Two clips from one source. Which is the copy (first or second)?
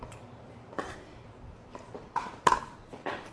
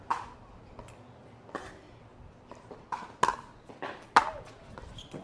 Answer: first